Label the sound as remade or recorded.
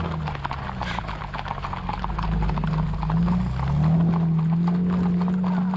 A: recorded